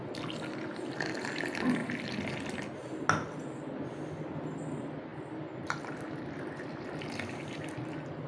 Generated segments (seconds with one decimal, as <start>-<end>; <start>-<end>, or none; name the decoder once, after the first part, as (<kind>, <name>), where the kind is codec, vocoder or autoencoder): none